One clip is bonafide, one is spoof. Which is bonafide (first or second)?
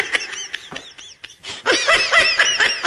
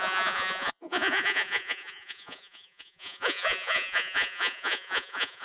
first